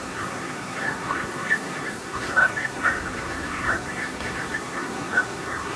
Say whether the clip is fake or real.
fake